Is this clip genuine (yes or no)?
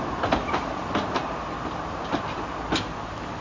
yes